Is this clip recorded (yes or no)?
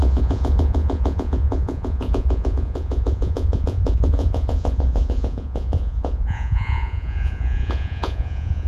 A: no